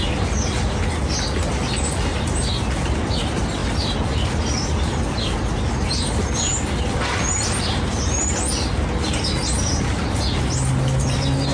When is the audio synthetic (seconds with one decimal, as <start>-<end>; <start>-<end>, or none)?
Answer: none